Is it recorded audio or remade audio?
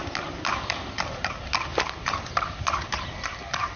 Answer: recorded